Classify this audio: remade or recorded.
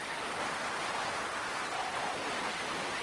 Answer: recorded